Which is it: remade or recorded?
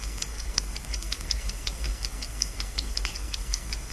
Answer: remade